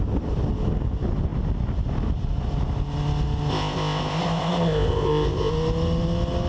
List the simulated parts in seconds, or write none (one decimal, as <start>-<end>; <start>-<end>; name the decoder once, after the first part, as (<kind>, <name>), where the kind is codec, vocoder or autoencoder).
3.5-5.5 (codec, ZipCodec)